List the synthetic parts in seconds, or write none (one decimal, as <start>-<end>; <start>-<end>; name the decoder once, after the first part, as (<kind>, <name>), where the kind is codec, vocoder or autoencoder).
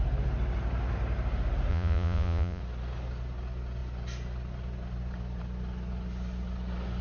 1.7-2.6 (vocoder, Vocos)